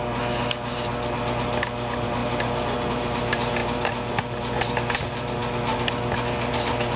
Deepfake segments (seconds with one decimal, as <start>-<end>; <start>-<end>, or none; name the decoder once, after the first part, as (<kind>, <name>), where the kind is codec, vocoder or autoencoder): none